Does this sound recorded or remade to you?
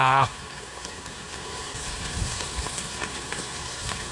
remade